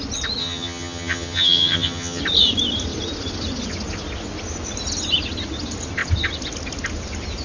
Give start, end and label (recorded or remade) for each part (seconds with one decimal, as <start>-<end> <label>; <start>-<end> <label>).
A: 0.0-0.4 recorded; 0.4-2.2 remade; 2.2-7.4 recorded